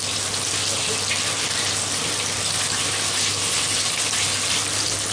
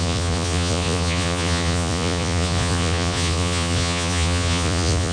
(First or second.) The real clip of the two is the first